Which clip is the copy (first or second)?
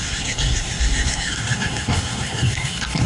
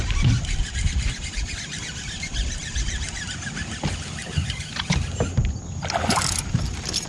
first